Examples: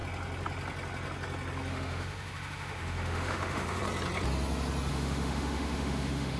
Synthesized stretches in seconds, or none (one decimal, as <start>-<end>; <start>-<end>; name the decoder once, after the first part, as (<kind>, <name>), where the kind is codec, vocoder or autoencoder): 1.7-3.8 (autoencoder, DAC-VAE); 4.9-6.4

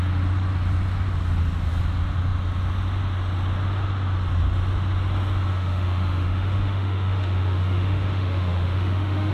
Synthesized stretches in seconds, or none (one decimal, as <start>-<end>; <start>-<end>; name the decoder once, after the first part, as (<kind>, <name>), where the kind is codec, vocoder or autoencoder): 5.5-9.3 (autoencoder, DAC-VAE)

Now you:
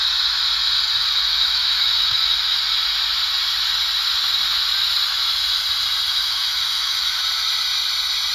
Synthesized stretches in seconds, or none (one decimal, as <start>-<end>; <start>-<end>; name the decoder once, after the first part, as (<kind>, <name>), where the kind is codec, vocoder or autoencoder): 1.0-2.6 (autoencoder, DAC-VAE); 6.1-7.2